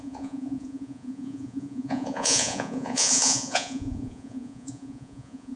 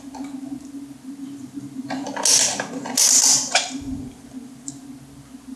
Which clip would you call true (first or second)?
second